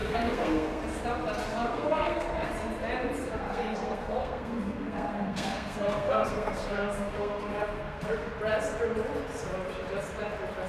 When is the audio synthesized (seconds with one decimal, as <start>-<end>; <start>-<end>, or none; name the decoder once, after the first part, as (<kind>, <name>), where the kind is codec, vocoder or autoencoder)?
0.0-0.8 (codec, SNAC); 1.5-2.5; 3.2-8.3